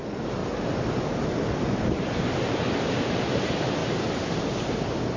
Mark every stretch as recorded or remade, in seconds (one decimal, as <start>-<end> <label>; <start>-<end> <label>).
0.0-5.2 recorded